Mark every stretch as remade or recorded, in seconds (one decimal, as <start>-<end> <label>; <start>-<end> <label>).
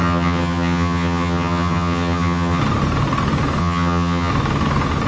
0.0-2.6 remade; 2.6-3.6 recorded; 3.6-4.3 remade; 4.3-5.1 recorded